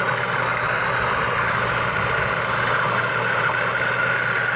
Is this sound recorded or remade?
recorded